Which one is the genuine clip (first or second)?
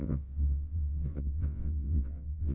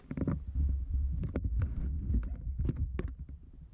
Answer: second